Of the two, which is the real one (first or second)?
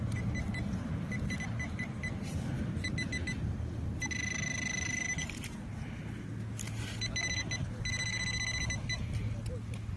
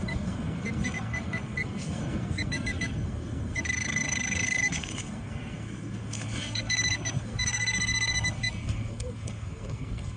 first